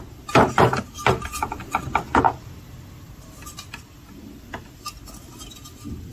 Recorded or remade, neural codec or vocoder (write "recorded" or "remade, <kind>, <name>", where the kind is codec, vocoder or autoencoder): recorded